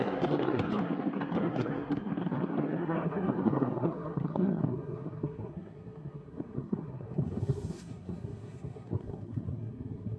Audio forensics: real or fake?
fake